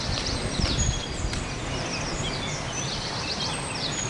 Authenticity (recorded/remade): recorded